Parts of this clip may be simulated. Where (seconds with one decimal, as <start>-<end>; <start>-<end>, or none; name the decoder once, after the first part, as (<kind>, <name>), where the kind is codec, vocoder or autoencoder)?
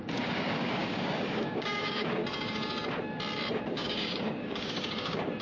0.0-2.2 (codec, DAC); 3.7-5.4